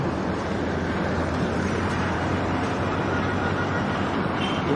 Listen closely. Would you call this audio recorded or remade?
remade